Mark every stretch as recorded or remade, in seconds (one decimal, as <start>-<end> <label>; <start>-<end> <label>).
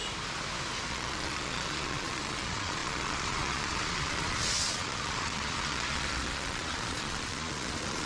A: 0.0-0.9 recorded; 0.9-8.1 remade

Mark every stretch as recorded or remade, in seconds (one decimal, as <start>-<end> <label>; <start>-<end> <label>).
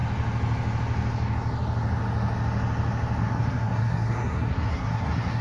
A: 0.0-3.2 recorded; 3.2-5.4 remade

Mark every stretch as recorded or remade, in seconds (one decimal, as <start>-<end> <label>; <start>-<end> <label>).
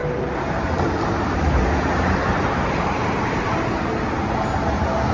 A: 0.0-1.4 remade; 1.4-1.9 recorded; 1.9-3.5 remade; 3.5-5.1 recorded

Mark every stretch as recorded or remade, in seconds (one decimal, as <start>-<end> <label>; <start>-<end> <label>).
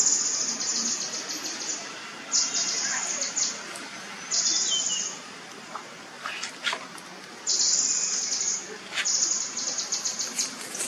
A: 0.0-10.9 recorded